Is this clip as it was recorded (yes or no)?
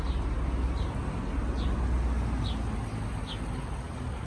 yes